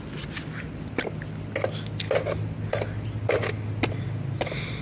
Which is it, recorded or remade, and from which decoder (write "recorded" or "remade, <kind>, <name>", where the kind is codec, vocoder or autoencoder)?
recorded